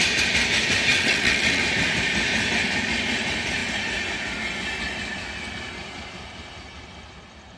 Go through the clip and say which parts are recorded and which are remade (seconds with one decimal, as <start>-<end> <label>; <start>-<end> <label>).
0.0-0.9 recorded; 0.9-1.6 remade; 1.6-7.6 recorded